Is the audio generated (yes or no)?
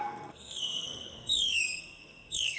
yes